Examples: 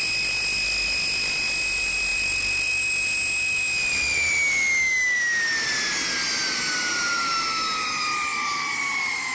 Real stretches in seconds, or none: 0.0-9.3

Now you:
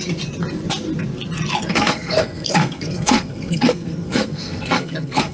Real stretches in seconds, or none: 0.0-1.7

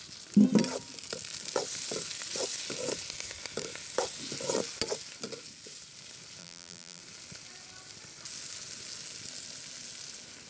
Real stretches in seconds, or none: 0.0-6.4; 7.0-10.5

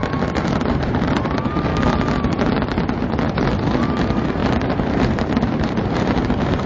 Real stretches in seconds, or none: 0.0-0.7; 1.7-3.5

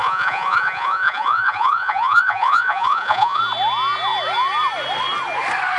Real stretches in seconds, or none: 3.4-5.8